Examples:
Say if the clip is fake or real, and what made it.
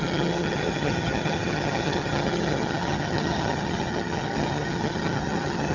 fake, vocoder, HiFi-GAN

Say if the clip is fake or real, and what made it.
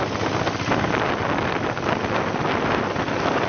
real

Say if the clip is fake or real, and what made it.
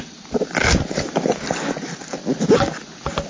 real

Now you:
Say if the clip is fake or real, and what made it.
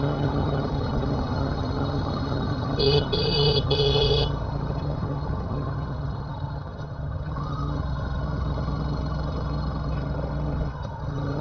fake, vocoder, HiFi-GAN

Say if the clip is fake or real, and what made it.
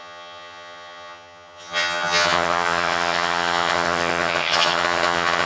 fake, vocoder, HiFi-GAN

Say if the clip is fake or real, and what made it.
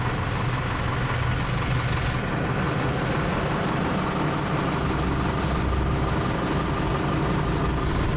real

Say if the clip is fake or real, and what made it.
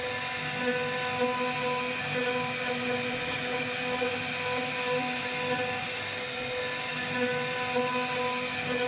real